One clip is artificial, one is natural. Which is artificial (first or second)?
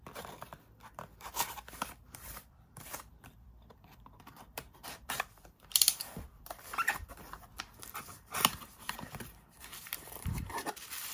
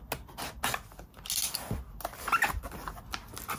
first